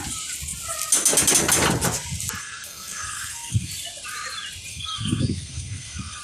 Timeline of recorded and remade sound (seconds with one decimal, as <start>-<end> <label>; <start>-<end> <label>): 0.0-2.4 recorded; 2.4-3.7 remade; 3.7-4.7 recorded; 4.7-6.2 remade

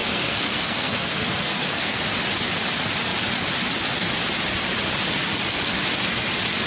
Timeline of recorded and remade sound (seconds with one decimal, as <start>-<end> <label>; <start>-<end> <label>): 0.0-2.0 remade; 2.0-6.7 recorded

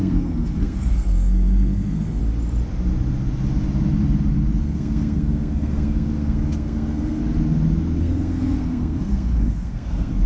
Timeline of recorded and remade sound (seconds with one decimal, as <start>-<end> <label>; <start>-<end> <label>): 0.0-2.2 remade; 2.2-4.6 recorded; 4.6-7.2 remade; 7.2-8.0 recorded; 8.0-10.3 remade